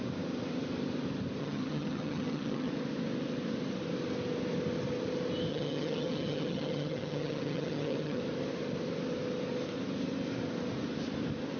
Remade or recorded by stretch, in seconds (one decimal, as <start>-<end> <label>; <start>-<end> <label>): 0.0-1.4 recorded; 1.4-2.7 remade; 2.7-5.5 recorded; 5.5-8.2 remade; 8.2-11.6 recorded